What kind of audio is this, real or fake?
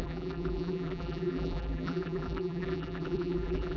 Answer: fake